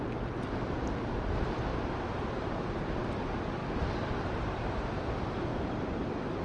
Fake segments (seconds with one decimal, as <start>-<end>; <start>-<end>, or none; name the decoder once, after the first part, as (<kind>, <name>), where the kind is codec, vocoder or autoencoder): none